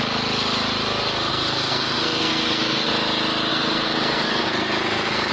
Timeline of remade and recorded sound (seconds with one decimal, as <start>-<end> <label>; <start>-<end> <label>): 0.0-1.3 recorded; 1.3-2.9 remade; 2.9-3.5 recorded; 3.5-5.3 remade